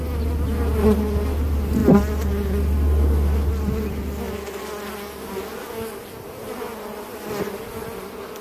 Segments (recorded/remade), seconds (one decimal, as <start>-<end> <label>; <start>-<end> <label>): 0.0-1.8 recorded; 1.8-4.9 remade; 4.9-7.1 recorded; 7.1-7.6 remade; 7.6-8.4 recorded